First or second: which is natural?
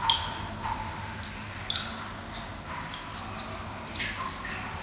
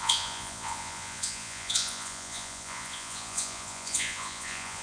first